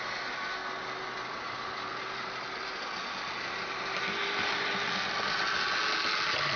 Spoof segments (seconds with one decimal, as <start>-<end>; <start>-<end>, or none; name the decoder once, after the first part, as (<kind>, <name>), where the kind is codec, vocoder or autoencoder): none